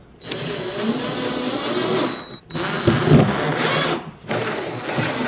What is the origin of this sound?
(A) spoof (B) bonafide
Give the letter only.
B